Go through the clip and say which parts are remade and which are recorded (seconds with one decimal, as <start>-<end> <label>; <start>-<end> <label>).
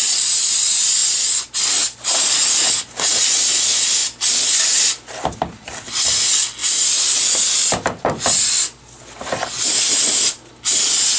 0.0-11.2 recorded